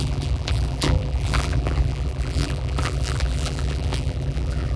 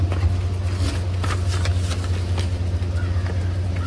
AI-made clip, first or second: first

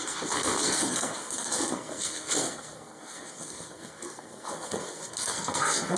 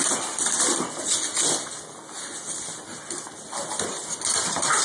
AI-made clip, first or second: first